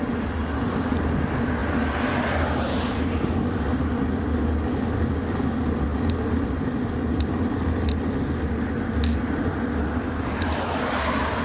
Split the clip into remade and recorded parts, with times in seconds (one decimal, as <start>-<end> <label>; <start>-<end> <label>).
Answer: 0.0-11.4 recorded